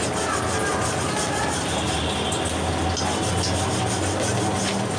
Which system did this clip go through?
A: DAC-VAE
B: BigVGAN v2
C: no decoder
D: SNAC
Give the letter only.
C